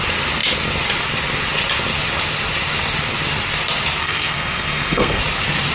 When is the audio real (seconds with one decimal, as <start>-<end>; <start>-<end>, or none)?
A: 0.0-4.0; 5.2-5.7